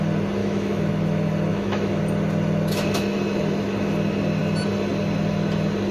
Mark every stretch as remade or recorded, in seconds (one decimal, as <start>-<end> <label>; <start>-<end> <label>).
0.0-0.4 recorded; 0.4-0.9 remade; 0.9-1.5 recorded; 1.5-2.0 remade; 2.0-5.9 recorded